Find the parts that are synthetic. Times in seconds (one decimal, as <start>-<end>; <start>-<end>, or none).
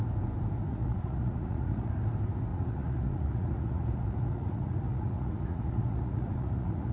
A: 0.7-1.9; 2.5-6.9